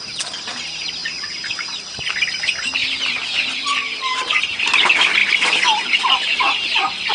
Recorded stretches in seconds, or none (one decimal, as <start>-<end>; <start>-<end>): 0.0-1.0; 2.0-2.8; 4.4-7.1